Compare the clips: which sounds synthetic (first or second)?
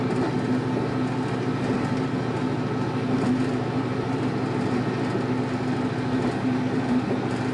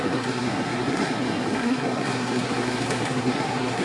second